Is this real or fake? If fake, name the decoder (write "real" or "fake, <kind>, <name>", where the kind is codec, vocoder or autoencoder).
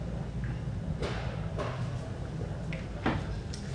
real